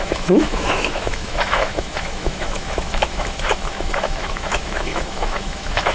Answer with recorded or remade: remade